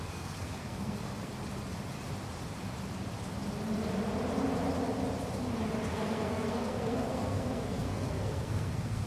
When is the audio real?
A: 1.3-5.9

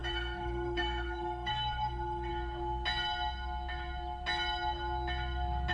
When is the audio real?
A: 2.3-5.7